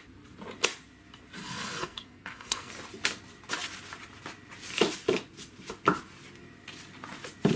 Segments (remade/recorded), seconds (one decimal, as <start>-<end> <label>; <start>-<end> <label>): 0.0-1.4 recorded; 1.4-2.7 remade; 2.7-7.6 recorded